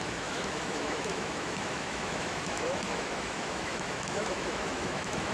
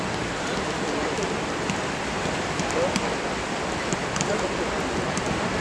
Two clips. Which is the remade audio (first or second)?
first